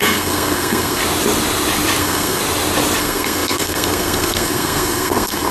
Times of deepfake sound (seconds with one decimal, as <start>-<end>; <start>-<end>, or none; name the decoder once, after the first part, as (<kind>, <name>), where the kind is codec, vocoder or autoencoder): 0.0-1.0 (codec, SNAC); 2.0-2.4; 3.0-5.5